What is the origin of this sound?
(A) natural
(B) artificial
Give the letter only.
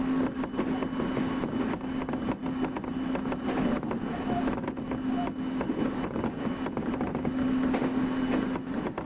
A